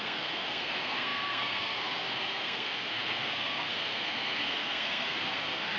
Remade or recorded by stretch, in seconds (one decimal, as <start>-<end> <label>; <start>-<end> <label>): 0.0-5.8 remade